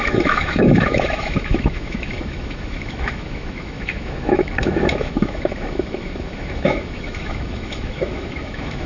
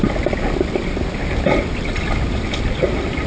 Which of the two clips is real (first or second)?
second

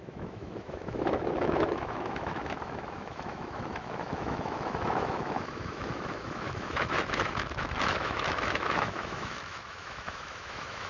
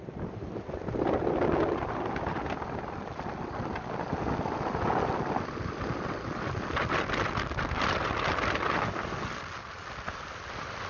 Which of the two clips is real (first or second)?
second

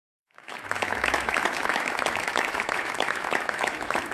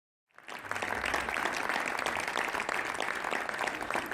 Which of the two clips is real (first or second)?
second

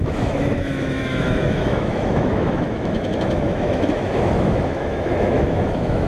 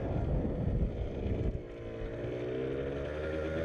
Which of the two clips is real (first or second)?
second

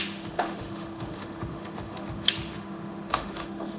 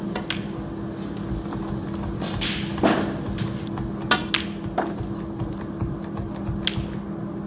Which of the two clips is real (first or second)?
second